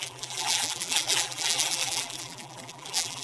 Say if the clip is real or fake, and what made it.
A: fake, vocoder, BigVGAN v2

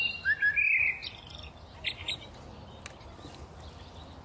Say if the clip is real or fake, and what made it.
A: real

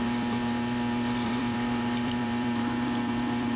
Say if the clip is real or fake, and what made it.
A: fake, vocoder, BigVGAN v2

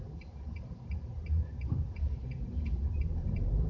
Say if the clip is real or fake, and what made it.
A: fake, vocoder, BigVGAN v2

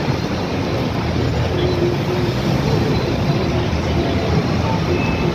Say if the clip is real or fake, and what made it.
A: fake, vocoder, BigVGAN v2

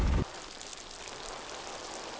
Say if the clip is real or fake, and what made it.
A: fake, vocoder, BigVGAN v2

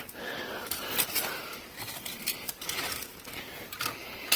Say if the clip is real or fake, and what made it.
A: real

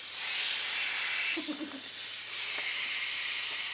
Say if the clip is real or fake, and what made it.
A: fake, vocoder, BigVGAN v2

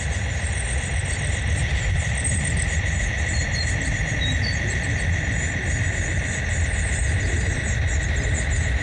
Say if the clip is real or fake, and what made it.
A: fake, vocoder, BigVGAN v2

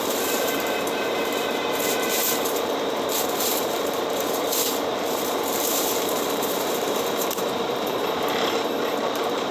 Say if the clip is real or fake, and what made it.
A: fake, vocoder, BigVGAN v2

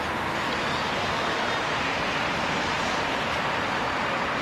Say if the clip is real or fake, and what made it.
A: real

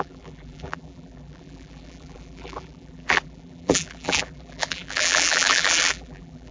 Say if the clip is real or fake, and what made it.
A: fake, vocoder, BigVGAN v2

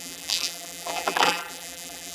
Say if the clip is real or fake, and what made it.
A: fake, vocoder, BigVGAN v2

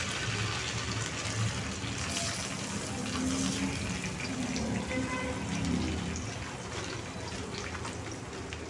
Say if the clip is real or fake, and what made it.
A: real